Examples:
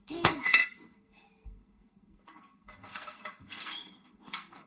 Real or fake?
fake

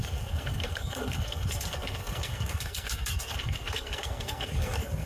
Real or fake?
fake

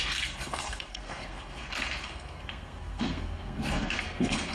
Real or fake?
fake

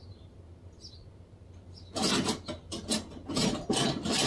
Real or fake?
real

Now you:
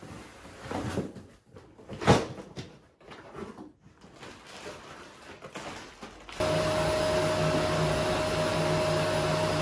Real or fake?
real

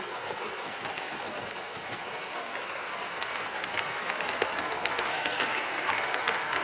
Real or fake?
fake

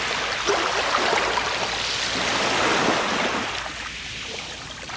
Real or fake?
real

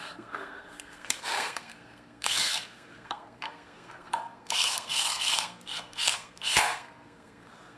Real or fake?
fake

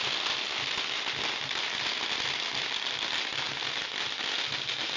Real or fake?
real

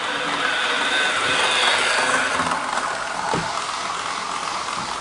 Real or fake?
real